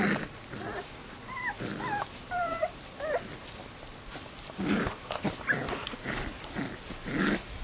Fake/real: fake